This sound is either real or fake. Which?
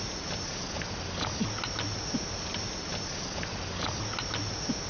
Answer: real